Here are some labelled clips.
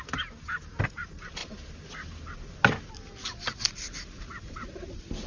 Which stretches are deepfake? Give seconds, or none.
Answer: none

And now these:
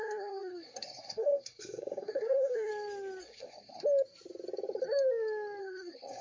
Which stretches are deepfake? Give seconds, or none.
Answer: 0.0-2.7 (codec, SNAC); 3.2-3.7; 5.6-6.2

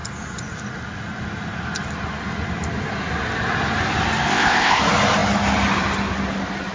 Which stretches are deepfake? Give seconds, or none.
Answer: 4.3-4.8 (codec, ZipCodec)